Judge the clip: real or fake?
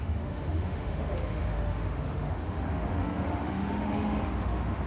fake